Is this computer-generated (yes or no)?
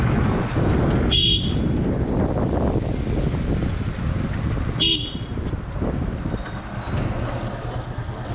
no